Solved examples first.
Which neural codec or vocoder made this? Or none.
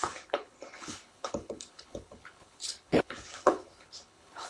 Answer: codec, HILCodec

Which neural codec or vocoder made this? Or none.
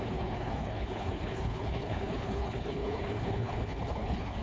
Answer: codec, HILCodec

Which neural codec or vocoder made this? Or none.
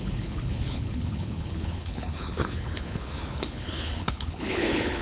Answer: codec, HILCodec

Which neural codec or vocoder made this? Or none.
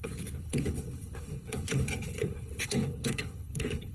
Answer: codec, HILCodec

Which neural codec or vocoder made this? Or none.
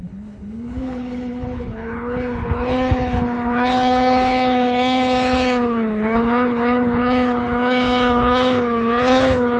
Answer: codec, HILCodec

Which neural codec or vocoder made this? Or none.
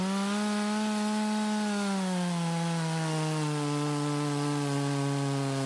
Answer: none